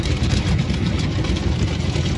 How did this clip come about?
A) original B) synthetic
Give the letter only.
B